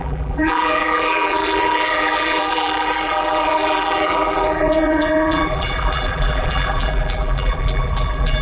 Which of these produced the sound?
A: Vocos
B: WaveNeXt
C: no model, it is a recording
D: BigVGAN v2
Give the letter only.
D